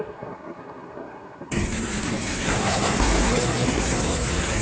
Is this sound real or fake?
fake